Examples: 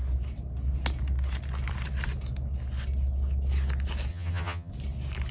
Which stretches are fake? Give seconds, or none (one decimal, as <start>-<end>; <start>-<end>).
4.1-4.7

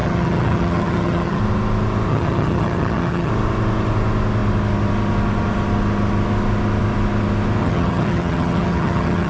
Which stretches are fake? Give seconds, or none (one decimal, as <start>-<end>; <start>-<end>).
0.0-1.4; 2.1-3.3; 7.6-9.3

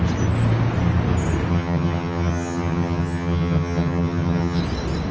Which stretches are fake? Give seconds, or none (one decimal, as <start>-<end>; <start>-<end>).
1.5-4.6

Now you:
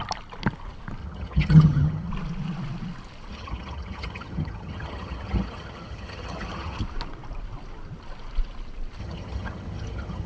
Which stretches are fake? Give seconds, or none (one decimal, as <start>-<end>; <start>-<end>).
1.0-2.1; 3.3-6.8; 9.0-10.3

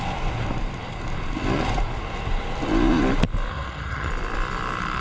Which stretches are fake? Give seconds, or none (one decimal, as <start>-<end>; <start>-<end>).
3.5-4.1

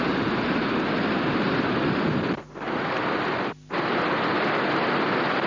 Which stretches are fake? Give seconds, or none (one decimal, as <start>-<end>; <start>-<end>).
none

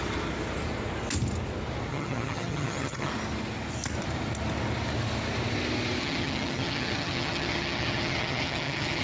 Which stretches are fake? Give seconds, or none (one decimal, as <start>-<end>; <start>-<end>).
1.9-3.1; 6.0-9.0